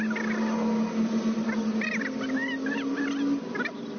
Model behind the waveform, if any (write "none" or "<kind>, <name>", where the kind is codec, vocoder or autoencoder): none